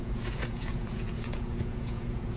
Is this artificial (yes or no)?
yes